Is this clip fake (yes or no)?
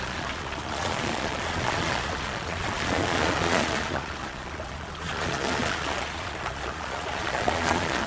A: yes